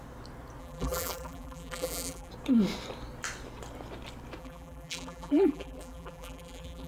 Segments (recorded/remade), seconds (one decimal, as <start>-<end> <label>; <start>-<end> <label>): 0.0-0.6 recorded; 0.6-2.3 remade; 2.3-4.4 recorded; 4.4-6.9 remade